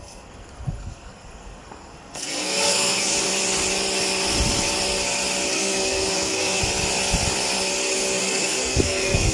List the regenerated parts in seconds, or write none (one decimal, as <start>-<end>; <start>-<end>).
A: 0.0-3.1; 5.5-6.6; 8.2-9.3